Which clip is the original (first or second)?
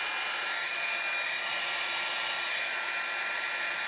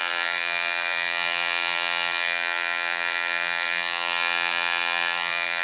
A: first